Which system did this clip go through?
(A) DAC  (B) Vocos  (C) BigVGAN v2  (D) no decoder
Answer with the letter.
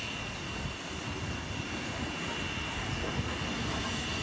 D